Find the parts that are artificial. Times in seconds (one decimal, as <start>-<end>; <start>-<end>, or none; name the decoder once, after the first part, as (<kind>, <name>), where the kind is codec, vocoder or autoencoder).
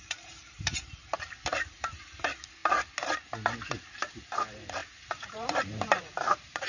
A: 0.0-1.0 (vocoder, BigVGAN v2); 1.7-2.6; 4.2-6.7